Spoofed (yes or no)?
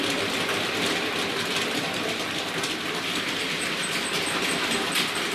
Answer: no